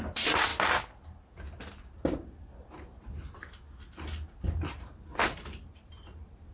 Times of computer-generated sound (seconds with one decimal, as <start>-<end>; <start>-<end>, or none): 0.0-0.5; 4.4-5.2; 5.7-6.5